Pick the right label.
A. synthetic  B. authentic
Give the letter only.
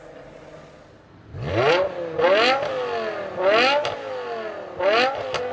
B